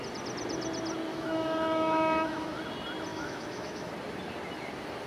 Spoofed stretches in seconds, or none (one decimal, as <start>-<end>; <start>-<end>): 1.1-2.6; 3.1-3.9